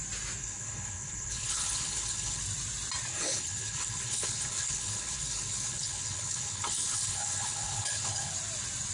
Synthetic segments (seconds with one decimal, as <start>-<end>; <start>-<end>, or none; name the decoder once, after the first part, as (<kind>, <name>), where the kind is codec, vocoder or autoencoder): 0.4-2.4 (codec, HILCodec); 3.1-8.3